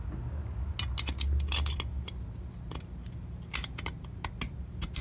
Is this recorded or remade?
recorded